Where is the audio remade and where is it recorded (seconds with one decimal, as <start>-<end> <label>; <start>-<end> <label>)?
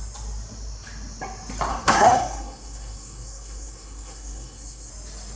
0.0-1.7 recorded; 1.7-4.9 remade; 4.9-5.4 recorded